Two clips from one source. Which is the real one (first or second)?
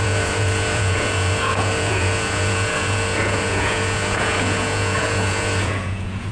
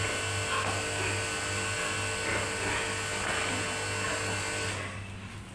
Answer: second